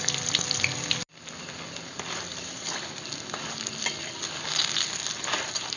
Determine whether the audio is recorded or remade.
recorded